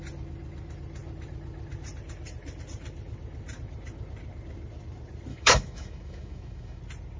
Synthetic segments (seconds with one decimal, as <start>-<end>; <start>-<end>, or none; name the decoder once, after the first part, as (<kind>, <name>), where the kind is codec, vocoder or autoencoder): 5.3-6.8 (autoencoder, DAC-VAE)

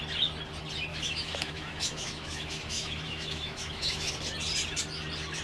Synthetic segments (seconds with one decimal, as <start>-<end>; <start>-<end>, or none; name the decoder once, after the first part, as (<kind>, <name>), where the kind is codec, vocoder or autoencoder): 0.9-4.1 (autoencoder, DAC-VAE)

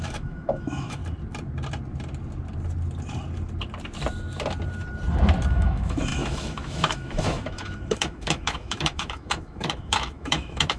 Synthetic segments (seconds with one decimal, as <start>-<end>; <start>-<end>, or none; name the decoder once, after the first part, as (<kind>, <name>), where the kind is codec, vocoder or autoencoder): 0.0-1.0 (autoencoder, DAC-VAE); 5.5-10.8

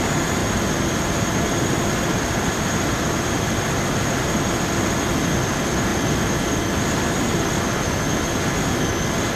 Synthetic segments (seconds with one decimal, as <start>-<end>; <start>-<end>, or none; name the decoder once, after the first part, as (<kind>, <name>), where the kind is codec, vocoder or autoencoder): none

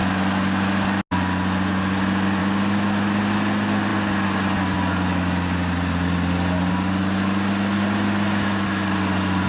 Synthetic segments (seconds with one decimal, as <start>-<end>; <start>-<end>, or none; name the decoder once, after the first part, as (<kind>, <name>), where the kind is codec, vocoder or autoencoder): none

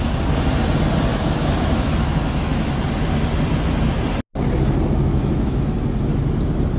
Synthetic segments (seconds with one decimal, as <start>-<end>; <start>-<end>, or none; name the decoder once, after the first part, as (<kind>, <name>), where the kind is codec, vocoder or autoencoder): 1.1-2.7 (autoencoder, DAC-VAE); 5.1-5.8

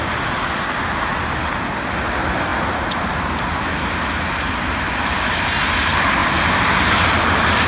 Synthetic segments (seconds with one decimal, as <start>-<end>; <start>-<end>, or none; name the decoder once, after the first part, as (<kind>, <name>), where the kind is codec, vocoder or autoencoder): none